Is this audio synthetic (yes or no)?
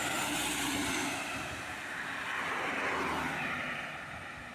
no